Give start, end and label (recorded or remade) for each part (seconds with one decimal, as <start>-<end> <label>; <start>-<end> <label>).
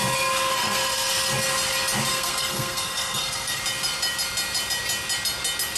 0.0-0.5 recorded; 0.5-1.1 remade; 1.1-2.1 recorded; 2.1-3.6 remade; 3.6-5.8 recorded